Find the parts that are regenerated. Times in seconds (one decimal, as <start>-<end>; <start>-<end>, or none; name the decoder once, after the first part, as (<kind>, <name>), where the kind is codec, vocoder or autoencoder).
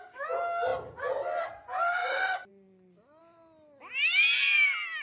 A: 2.0-2.5 (vocoder, BigVGAN v2)